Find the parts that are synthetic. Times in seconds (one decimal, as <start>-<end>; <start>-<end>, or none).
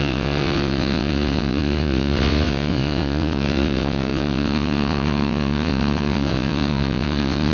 0.0-7.5